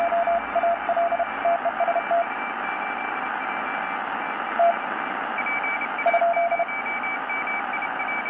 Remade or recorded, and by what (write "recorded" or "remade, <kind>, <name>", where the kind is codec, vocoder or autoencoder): recorded